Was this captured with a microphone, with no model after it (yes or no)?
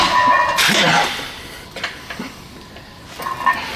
no